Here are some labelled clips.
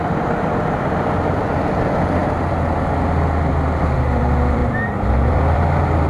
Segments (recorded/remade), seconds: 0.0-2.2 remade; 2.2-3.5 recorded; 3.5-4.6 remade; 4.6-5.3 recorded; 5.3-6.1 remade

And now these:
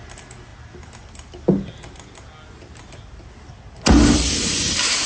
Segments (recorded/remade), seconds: 0.0-5.1 recorded

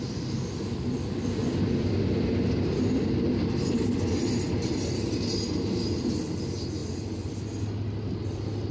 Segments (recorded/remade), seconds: 0.0-8.7 recorded

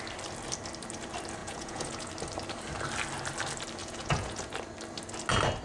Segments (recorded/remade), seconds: 0.0-1.4 recorded; 1.4-2.1 remade; 2.1-3.8 recorded; 3.8-4.5 remade; 4.5-5.6 recorded